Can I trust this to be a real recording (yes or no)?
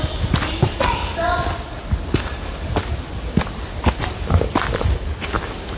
yes